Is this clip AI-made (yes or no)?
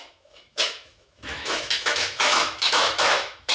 yes